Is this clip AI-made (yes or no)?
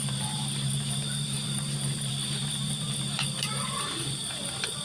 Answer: yes